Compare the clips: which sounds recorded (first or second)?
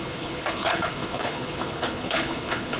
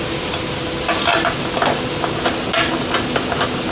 second